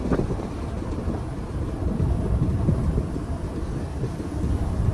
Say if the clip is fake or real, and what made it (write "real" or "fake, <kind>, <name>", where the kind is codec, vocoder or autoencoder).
real